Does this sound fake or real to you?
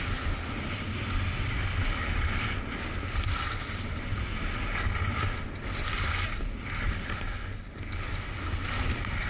real